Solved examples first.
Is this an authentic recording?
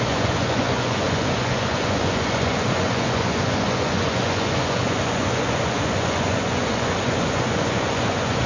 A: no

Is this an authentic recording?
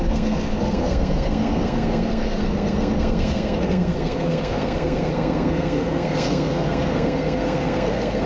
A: no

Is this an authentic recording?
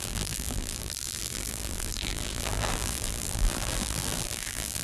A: no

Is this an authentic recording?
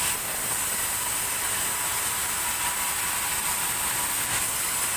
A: yes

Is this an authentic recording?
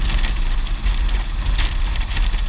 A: yes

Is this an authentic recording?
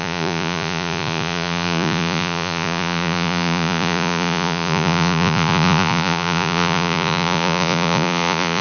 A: no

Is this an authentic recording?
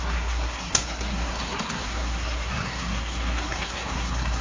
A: no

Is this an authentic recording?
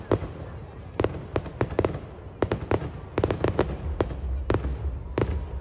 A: yes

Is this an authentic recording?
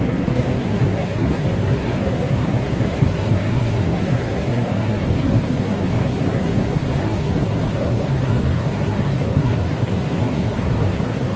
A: no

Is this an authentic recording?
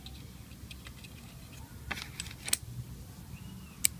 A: yes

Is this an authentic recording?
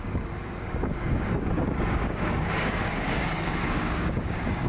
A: no